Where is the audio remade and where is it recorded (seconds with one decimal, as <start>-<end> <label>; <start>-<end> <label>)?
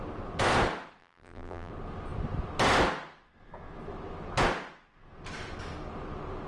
0.0-1.0 recorded; 1.0-1.7 remade; 1.7-6.5 recorded